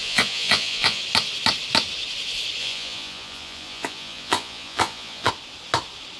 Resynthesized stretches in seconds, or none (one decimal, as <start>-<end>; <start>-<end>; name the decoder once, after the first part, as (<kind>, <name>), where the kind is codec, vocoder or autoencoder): 0.0-1.0 (vocoder, Vocos); 2.6-5.3